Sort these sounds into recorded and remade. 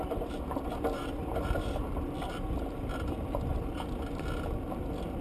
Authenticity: recorded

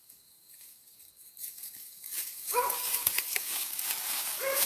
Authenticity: remade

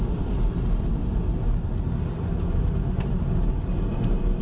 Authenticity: recorded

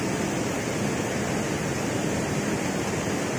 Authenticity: recorded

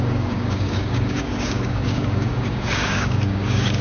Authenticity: remade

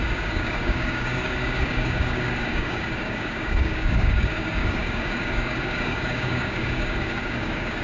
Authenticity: remade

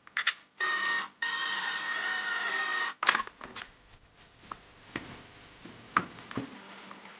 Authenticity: recorded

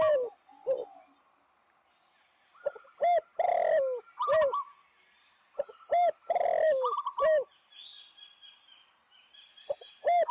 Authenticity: recorded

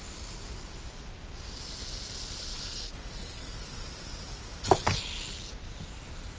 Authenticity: recorded